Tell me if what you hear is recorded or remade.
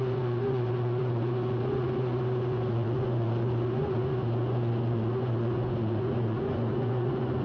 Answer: remade